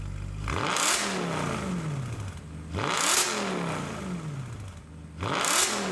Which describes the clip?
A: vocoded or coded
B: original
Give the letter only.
B